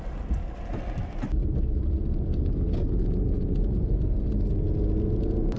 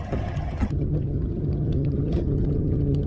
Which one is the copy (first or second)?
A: second